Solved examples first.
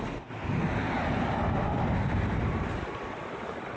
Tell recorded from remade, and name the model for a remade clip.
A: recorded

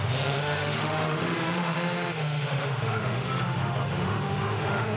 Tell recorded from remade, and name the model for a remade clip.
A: remade, autoencoder, DAC-VAE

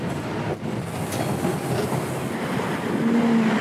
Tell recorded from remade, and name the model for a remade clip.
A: recorded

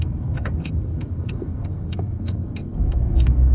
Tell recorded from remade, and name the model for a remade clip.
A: remade, codec, SNAC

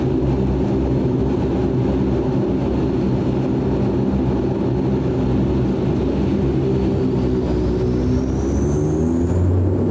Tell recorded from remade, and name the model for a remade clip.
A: recorded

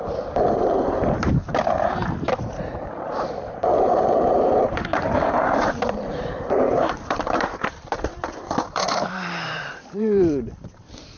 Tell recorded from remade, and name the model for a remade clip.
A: remade, vocoder, BigVGAN v2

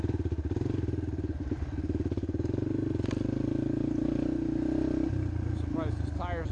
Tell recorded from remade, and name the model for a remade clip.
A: recorded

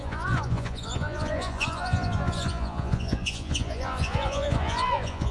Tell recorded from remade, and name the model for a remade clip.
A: remade, vocoder, Vocos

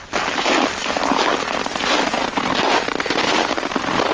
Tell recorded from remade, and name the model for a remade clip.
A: recorded